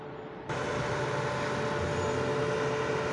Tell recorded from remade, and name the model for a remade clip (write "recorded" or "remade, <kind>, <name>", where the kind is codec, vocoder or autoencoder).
recorded